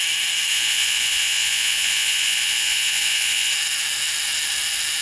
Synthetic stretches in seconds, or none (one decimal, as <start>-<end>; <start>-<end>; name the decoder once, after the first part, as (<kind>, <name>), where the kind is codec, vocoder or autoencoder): 0.5-3.5 (vocoder, Vocos)